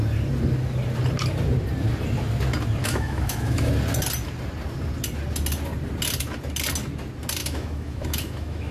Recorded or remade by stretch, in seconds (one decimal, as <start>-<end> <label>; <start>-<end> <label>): 0.0-2.8 recorded; 2.8-3.7 remade; 3.7-7.4 recorded; 7.4-8.7 remade

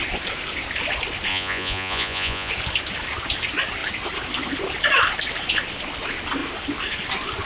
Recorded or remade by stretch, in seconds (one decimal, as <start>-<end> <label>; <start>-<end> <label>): 0.0-1.3 recorded; 1.3-2.5 remade; 2.5-7.5 recorded

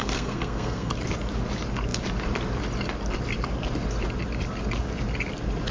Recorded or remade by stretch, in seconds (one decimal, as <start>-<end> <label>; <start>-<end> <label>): 0.0-0.9 remade; 0.9-5.7 recorded

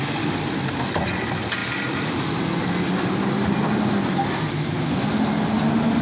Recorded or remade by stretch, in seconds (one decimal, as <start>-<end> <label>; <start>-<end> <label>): 0.0-6.0 recorded

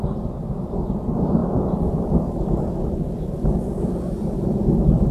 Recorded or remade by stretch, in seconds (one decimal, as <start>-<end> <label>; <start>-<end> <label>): 0.0-5.1 recorded